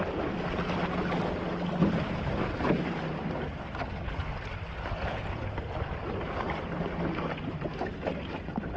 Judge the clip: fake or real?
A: real